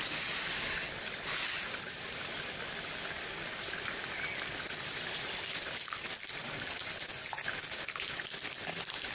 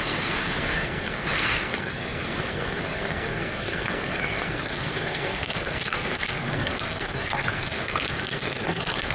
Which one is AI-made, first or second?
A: second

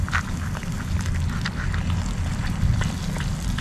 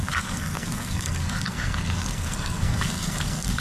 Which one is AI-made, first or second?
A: second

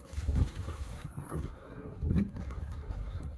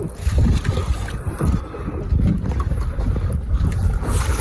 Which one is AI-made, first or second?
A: first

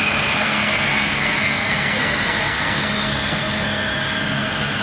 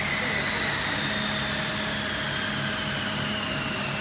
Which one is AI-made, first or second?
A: first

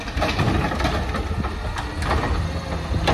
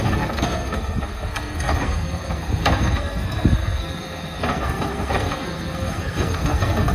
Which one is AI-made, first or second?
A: second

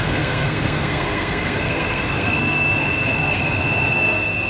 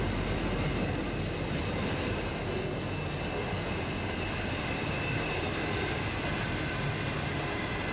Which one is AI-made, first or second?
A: first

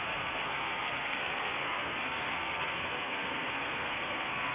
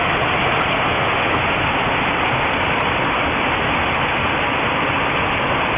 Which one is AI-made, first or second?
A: first